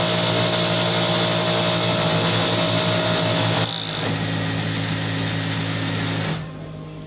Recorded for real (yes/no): yes